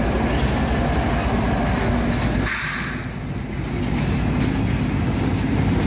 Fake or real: real